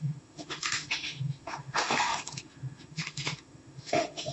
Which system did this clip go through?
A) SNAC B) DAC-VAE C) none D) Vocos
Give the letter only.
B